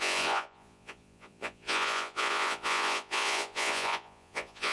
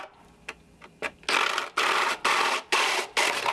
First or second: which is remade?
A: first